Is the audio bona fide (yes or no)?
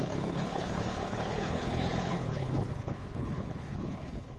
no